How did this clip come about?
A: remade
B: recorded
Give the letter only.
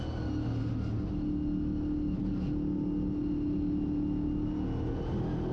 B